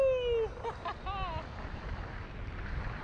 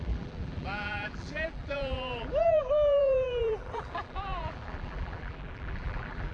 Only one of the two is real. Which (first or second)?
first